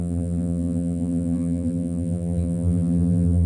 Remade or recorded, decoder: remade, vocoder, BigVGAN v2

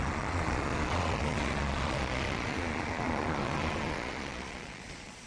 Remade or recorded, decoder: remade, vocoder, Vocos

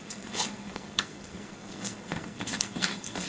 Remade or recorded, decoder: remade, codec, SNAC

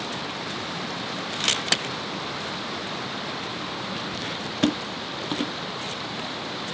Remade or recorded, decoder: recorded